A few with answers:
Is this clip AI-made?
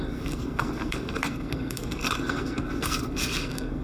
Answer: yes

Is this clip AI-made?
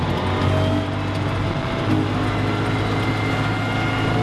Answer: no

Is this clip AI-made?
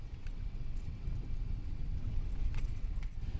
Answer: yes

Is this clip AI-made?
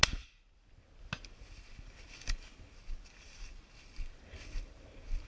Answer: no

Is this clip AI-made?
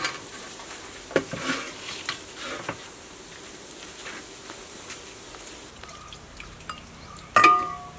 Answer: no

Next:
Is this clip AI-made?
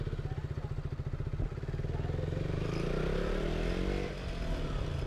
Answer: no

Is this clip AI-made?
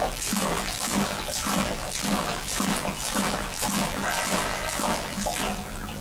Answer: yes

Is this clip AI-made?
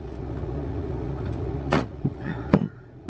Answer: yes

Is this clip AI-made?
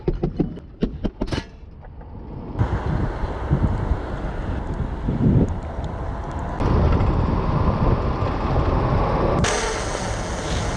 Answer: no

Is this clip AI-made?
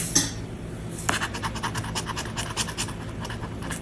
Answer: no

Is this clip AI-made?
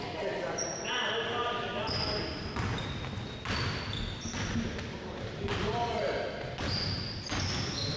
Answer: no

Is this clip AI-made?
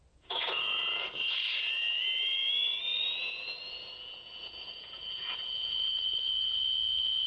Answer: yes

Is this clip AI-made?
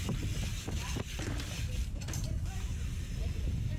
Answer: no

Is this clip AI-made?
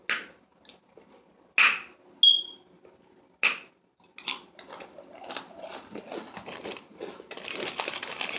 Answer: no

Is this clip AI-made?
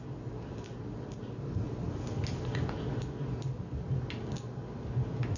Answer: no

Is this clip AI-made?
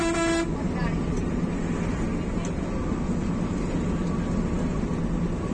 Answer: no